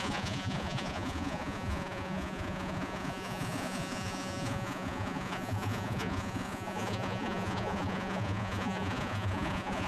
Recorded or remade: remade